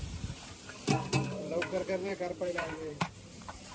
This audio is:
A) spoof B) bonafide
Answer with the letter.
A